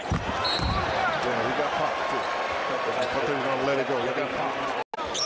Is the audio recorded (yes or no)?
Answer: yes